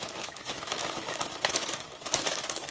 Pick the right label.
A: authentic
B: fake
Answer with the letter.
B